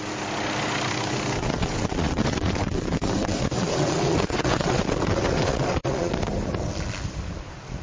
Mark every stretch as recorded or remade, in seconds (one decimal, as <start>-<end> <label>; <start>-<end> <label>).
0.0-1.4 recorded; 1.4-6.1 remade; 6.1-7.8 recorded